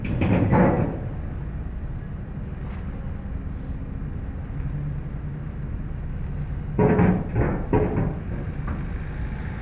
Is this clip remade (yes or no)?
no